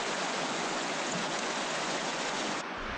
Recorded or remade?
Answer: remade